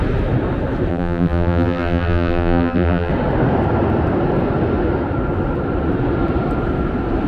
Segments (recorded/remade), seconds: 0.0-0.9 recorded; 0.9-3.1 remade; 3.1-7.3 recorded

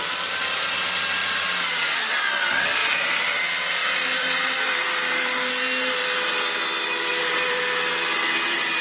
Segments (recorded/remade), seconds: 0.0-1.2 recorded; 1.2-2.1 remade; 2.1-3.8 recorded; 3.8-6.3 remade; 6.3-7.1 recorded; 7.1-7.6 remade; 7.6-8.8 recorded

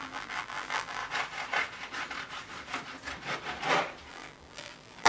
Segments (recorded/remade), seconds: 0.0-1.0 remade; 1.0-4.1 recorded; 4.1-5.1 remade